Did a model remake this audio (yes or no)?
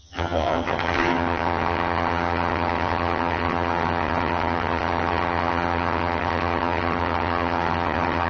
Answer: yes